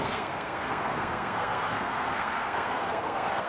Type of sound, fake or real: fake